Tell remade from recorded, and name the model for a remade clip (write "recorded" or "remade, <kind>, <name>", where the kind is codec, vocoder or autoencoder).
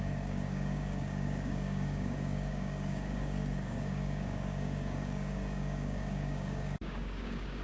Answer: remade, codec, DAC